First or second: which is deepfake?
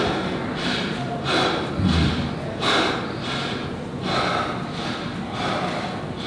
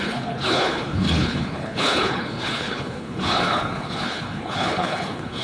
second